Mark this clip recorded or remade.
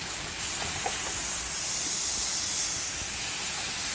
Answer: recorded